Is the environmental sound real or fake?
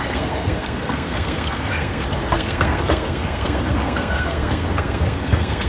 fake